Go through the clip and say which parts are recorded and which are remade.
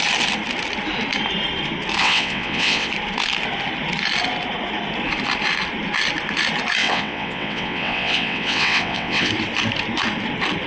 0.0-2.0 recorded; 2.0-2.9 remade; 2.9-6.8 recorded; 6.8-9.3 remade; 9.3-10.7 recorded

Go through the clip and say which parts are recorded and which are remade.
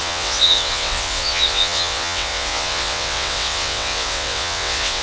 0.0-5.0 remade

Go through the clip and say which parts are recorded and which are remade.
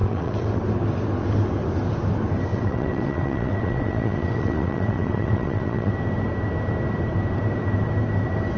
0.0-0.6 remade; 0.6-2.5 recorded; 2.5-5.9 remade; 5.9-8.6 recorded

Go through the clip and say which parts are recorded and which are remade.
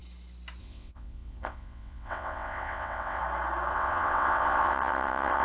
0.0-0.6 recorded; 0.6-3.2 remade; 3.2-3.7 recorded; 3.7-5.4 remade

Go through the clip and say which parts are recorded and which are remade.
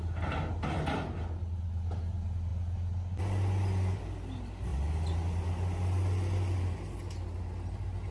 0.0-8.1 recorded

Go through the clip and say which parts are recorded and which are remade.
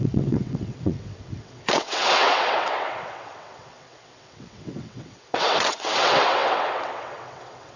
0.0-7.8 remade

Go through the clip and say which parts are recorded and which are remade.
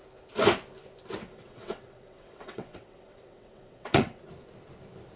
0.0-1.2 recorded; 1.2-4.3 remade; 4.3-5.2 recorded